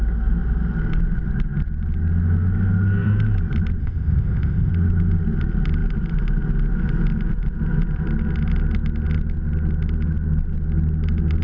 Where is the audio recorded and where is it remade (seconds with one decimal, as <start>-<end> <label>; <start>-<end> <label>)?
0.0-3.8 recorded; 3.8-4.7 remade; 4.7-11.4 recorded

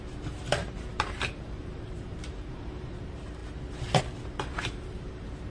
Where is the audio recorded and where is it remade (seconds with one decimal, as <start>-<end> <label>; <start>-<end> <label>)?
0.0-0.6 recorded; 0.6-2.9 remade; 2.9-4.5 recorded; 4.5-5.5 remade

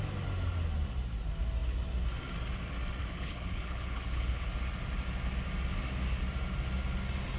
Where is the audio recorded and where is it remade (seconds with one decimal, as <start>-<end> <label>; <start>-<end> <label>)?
0.0-3.0 recorded; 3.0-4.5 remade; 4.5-7.4 recorded

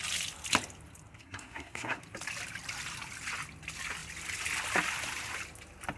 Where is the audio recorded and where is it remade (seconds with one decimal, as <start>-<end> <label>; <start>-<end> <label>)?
0.0-1.2 recorded; 1.2-2.0 remade; 2.0-6.0 recorded

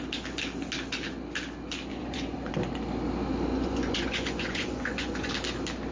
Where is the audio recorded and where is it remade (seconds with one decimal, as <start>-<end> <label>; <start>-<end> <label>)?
0.0-1.9 recorded; 1.9-2.5 remade; 2.5-3.5 recorded; 3.5-5.3 remade; 5.3-5.9 recorded

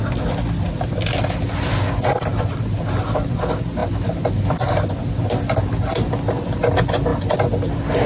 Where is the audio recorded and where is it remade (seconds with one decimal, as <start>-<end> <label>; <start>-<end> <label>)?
0.0-8.1 recorded

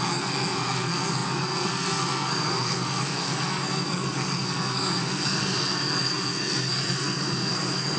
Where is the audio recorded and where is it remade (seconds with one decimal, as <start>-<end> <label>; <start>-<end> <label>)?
0.0-8.0 remade

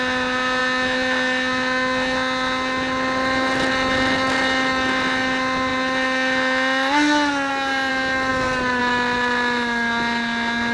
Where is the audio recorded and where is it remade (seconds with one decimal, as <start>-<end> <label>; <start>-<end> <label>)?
0.0-10.7 recorded